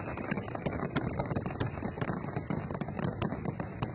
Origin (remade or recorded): recorded